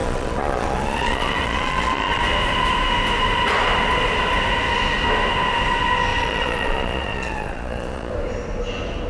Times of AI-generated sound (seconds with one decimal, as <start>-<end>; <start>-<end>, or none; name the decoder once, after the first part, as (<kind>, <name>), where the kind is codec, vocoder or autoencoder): 0.0-2.2 (vocoder, Vocos); 6.1-8.1